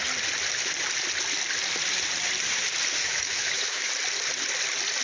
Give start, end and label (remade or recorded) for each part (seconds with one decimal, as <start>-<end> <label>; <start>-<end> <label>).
0.0-3.0 recorded; 3.0-3.9 remade; 3.9-5.0 recorded